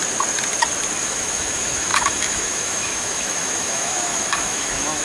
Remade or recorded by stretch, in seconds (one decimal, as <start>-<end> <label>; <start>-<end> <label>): 0.0-1.0 recorded; 1.0-5.0 remade

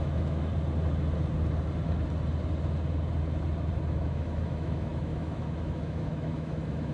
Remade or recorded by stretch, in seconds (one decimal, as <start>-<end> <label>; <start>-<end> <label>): 0.0-0.5 remade; 0.5-3.9 recorded; 3.9-6.9 remade

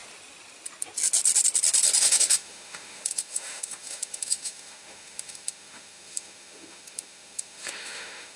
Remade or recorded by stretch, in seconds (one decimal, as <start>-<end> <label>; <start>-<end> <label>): 0.0-2.0 recorded; 2.0-8.4 remade